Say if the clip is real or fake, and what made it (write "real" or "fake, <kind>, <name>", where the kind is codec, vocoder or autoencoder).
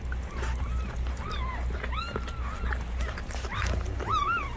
real